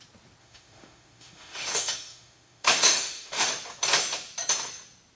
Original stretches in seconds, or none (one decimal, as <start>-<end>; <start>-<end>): 0.0-0.4; 3.5-5.2